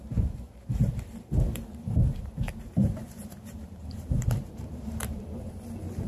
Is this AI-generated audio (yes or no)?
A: yes